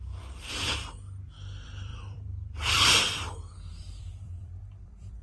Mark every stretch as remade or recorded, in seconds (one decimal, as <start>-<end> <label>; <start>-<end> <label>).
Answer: 0.0-5.2 remade